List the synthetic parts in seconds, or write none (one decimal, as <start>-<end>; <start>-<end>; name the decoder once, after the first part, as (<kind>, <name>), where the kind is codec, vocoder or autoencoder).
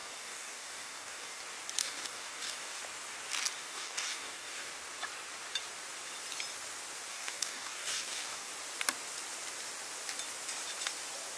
0.0-1.4 (codec, DAC); 1.8-2.8; 3.6-4.7; 7.1-8.5